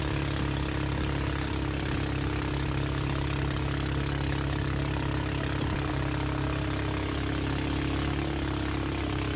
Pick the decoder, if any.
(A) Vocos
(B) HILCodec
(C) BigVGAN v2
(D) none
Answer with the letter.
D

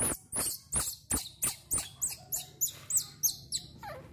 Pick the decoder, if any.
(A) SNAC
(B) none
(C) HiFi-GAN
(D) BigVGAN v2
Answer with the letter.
B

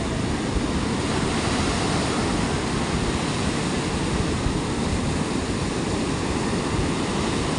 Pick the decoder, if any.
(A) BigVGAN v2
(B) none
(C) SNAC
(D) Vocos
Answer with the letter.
B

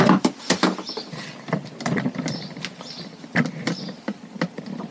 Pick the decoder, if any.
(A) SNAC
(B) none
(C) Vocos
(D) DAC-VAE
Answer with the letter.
B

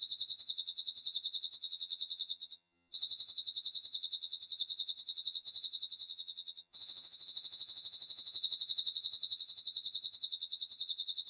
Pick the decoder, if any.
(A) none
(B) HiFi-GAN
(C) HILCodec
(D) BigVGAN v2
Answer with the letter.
B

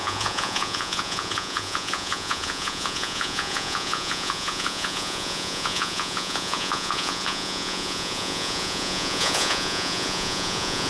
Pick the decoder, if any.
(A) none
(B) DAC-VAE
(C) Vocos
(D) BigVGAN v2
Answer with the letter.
C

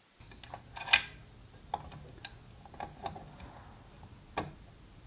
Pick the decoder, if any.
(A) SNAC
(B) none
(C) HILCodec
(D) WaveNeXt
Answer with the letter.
B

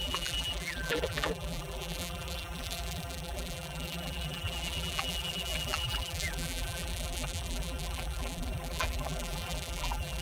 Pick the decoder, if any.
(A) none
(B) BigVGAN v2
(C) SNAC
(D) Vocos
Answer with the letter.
B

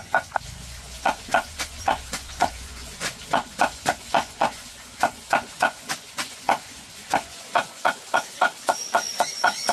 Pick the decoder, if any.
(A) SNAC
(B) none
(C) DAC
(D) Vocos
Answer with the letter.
D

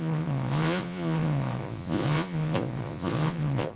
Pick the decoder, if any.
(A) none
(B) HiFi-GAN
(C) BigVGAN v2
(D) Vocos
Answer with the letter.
D